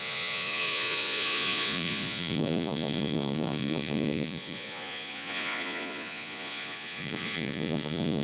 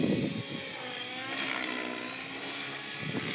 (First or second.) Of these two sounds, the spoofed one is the first